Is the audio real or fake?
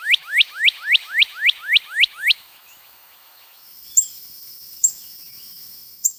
fake